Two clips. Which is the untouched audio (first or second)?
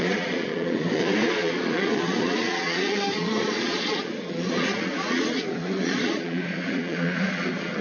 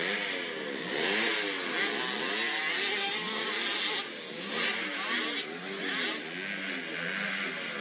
second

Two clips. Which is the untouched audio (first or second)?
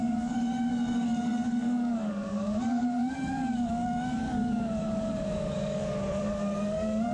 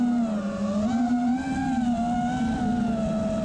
second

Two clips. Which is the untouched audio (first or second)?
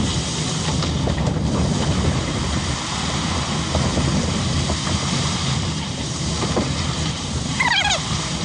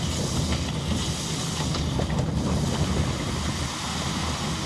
second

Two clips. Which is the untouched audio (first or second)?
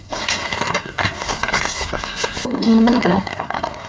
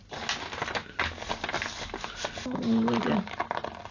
second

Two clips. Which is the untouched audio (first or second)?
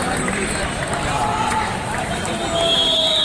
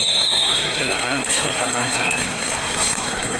first